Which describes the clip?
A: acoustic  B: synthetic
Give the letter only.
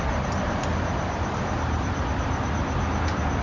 A